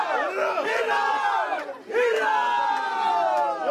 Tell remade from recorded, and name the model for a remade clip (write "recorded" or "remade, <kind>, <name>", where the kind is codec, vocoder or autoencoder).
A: recorded